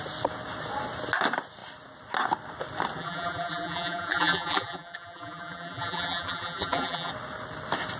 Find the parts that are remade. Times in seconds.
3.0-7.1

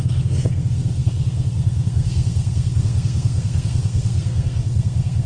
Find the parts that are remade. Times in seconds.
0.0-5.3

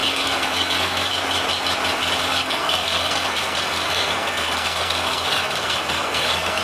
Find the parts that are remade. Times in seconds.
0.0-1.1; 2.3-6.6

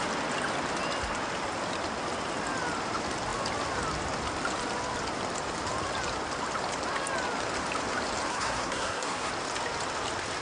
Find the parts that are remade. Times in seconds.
8.3-9.3